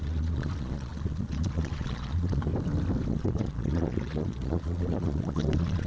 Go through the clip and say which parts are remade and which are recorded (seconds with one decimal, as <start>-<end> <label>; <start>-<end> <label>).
0.0-2.5 remade; 2.5-3.1 recorded; 3.1-5.9 remade